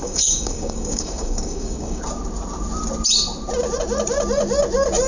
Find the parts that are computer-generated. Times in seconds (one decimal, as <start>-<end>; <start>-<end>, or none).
0.0-2.0

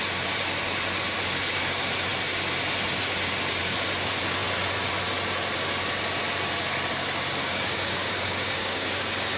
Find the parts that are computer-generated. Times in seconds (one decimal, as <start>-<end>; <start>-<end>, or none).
7.4-9.0

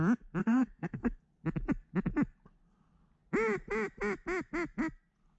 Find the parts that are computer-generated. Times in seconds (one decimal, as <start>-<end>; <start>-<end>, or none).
0.4-1.2

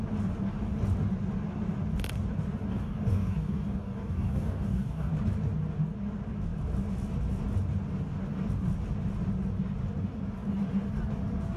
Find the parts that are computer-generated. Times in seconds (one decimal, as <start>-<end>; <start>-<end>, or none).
2.7-5.1

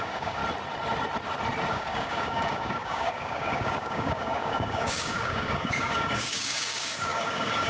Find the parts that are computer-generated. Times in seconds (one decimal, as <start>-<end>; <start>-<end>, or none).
0.0-0.4; 1.7-7.7